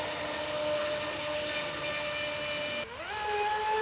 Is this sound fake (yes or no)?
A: no